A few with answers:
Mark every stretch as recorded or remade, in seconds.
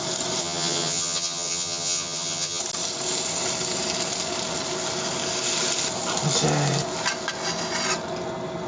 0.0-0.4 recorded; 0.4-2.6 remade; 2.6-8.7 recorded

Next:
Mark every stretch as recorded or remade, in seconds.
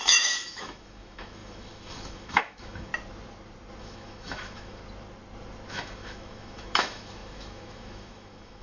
0.0-2.9 remade; 2.9-3.8 recorded; 3.8-4.8 remade; 4.8-5.7 recorded; 5.7-8.6 remade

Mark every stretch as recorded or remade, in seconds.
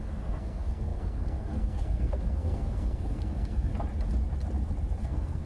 0.0-3.7 remade; 3.7-5.0 recorded; 5.0-5.5 remade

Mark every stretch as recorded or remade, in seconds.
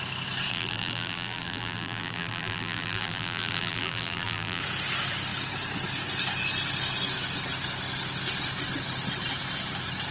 0.0-0.5 recorded; 0.5-4.6 remade; 4.6-10.1 recorded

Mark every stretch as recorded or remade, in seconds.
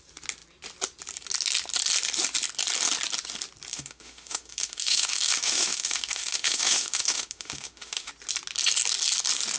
0.0-3.7 recorded; 3.7-8.1 remade; 8.1-9.6 recorded